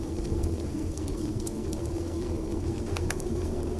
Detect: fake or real fake